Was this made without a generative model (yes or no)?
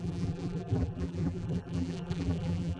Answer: no